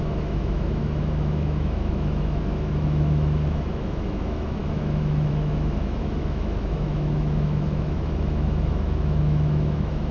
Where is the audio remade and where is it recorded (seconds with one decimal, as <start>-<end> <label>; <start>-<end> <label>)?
0.0-10.1 remade

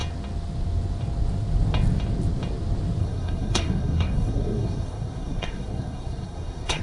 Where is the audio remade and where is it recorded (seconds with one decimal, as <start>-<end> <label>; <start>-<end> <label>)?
0.0-3.0 recorded; 3.0-6.8 remade

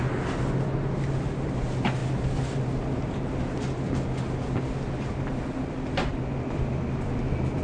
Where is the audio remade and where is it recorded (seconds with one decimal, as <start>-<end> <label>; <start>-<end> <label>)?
0.0-6.1 recorded; 6.1-7.6 remade